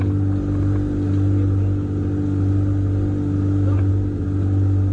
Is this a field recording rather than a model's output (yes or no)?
yes